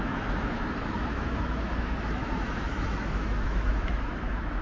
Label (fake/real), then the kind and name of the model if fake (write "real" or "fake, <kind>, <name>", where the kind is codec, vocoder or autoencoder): fake, autoencoder, DAC-VAE